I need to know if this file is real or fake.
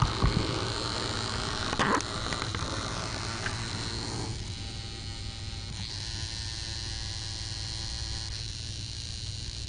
real